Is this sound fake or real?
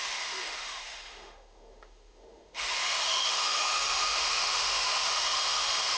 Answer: fake